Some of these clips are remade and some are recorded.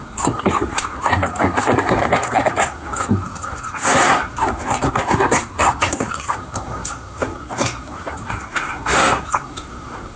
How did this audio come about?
remade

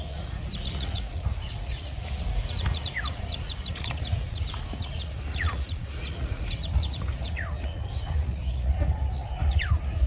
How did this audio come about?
remade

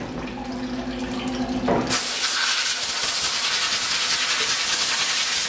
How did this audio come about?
recorded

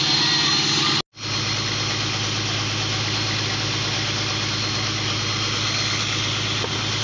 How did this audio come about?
recorded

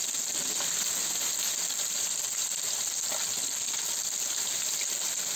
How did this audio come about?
recorded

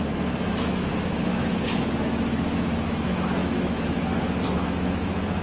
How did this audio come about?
remade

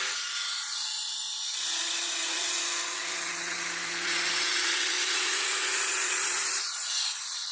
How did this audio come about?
remade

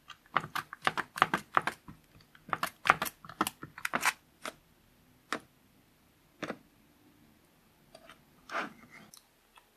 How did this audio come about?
recorded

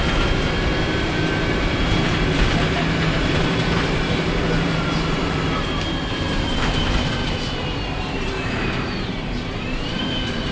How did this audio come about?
remade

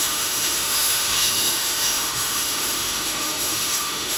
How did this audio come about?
remade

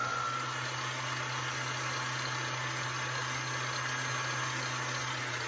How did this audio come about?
recorded